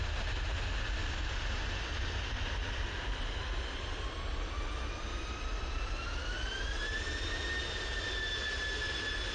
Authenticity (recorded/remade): recorded